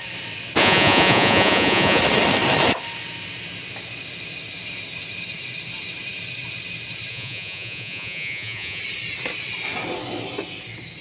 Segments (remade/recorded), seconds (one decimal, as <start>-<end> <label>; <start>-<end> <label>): 0.0-0.6 recorded; 0.6-2.0 remade; 2.0-7.1 recorded; 7.1-8.8 remade; 8.8-11.0 recorded